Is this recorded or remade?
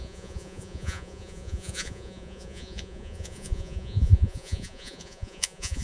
remade